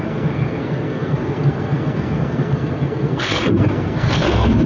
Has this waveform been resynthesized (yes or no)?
yes